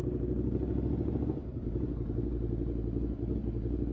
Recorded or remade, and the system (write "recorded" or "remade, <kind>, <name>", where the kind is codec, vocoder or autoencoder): recorded